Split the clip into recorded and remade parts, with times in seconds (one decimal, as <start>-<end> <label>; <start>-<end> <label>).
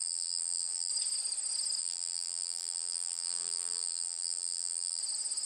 0.0-0.9 remade; 0.9-1.8 recorded; 1.8-5.0 remade; 5.0-5.4 recorded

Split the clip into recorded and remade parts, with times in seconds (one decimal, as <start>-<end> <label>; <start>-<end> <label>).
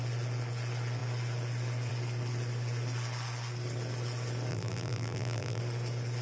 0.0-4.5 recorded; 4.5-5.6 remade; 5.6-6.2 recorded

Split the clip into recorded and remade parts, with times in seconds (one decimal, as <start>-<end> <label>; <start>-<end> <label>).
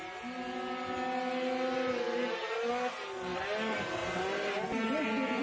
0.0-5.4 recorded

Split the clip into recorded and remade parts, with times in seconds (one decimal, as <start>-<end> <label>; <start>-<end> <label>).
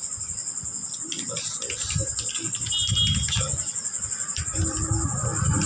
0.0-5.7 recorded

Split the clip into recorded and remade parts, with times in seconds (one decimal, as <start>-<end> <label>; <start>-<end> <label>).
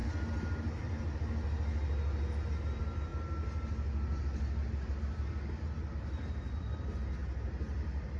0.0-8.2 recorded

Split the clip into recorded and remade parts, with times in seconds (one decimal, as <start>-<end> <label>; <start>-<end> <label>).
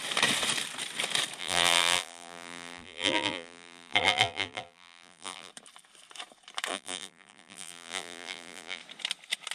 0.0-1.4 recorded; 1.4-5.5 remade; 5.5-6.7 recorded; 6.7-8.8 remade; 8.8-9.5 recorded